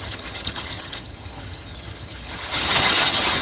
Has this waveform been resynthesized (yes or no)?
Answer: yes